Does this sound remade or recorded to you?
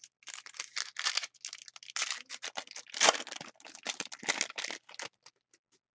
recorded